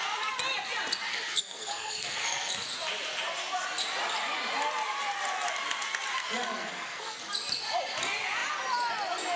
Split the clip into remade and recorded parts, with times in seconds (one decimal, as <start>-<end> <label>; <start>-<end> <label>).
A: 0.0-1.1 recorded; 1.1-2.5 remade; 2.5-6.2 recorded; 6.2-7.2 remade; 7.2-9.4 recorded